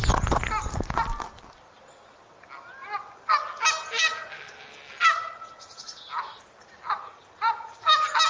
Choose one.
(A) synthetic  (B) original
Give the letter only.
B